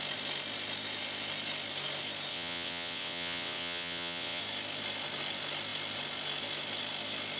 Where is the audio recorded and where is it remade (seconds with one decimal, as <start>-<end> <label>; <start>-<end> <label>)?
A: 0.0-2.3 recorded; 2.3-4.4 remade; 4.4-7.4 recorded